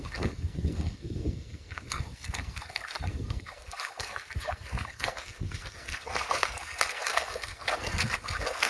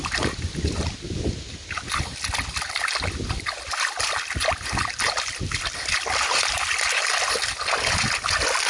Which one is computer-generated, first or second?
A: first